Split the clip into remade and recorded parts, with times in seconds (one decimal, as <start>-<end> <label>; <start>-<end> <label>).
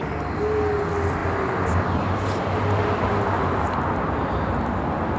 0.0-5.2 recorded